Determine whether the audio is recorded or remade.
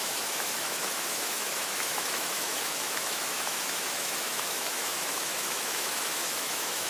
remade